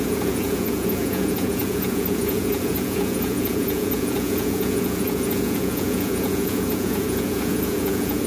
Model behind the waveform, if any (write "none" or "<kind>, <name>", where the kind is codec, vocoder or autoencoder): vocoder, Vocos